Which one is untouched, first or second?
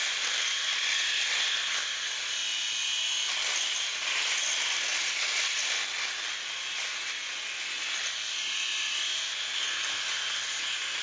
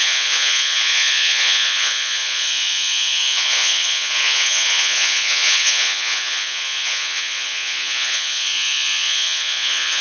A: first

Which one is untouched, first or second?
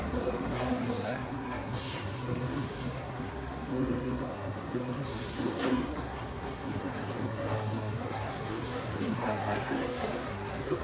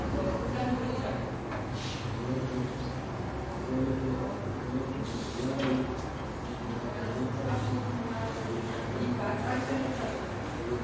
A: second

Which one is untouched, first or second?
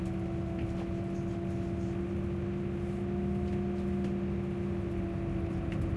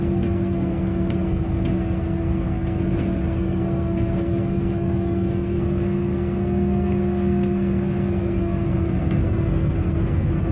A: first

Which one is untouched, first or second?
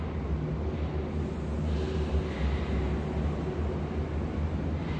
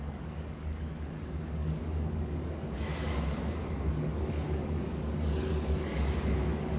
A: first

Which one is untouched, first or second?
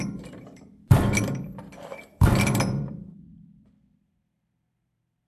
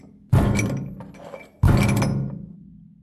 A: second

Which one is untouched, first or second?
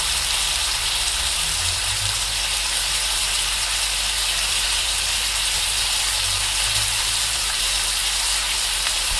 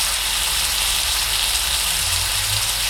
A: second